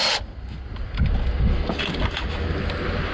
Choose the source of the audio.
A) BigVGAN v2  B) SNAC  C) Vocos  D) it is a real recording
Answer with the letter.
D